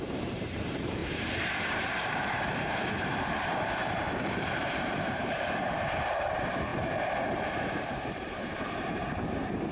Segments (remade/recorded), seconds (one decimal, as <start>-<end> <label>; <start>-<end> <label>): 0.0-1.0 remade; 1.0-1.7 recorded; 1.7-9.7 remade